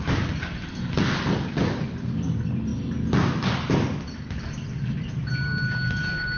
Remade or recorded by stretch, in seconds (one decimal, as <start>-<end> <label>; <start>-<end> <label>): 0.0-6.4 recorded